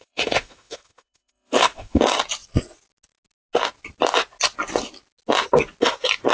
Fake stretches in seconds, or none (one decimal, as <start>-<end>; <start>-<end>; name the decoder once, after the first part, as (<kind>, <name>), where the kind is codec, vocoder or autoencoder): 0.0-2.0 (autoencoder, DAC-VAE)